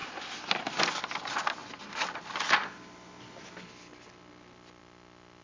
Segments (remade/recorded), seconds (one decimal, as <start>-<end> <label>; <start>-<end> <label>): 0.0-5.4 recorded